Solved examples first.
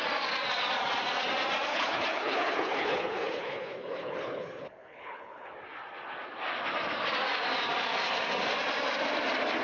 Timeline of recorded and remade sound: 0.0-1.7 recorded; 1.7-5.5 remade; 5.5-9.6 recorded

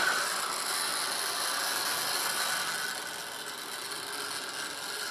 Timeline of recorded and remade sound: 0.0-5.1 recorded

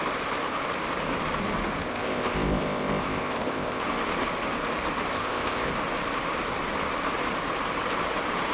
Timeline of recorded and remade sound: 0.0-1.8 recorded; 1.8-3.8 remade; 3.8-5.1 recorded; 5.1-5.7 remade; 5.7-8.5 recorded

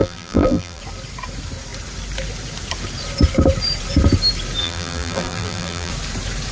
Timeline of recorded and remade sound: 0.0-0.8 remade; 0.8-4.6 recorded; 4.6-5.9 remade; 5.9-6.5 recorded

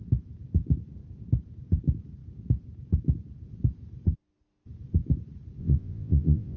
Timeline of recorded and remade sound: 0.0-5.6 recorded; 5.6-6.6 remade